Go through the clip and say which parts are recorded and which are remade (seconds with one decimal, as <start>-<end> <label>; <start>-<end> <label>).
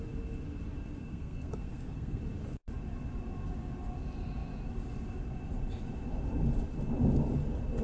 0.0-1.0 recorded; 1.0-2.2 remade; 2.2-7.8 recorded